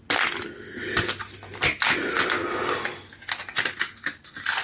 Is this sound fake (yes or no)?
no